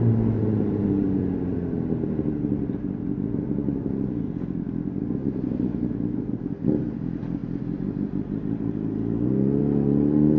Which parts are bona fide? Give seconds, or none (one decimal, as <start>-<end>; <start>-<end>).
0.0-10.4